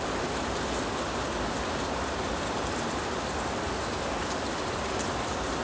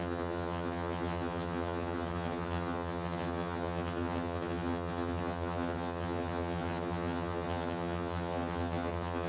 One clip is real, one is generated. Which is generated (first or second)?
second